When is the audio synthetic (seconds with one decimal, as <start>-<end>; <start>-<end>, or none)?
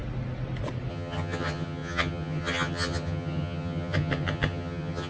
0.9-5.1